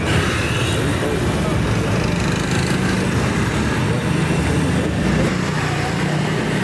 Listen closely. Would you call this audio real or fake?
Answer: real